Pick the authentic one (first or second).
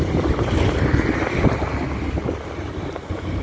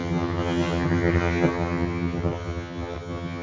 first